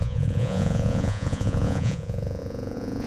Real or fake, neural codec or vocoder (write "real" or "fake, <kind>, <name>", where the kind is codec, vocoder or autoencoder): fake, vocoder, Vocos